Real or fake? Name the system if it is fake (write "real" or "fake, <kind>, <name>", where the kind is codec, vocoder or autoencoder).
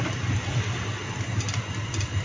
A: real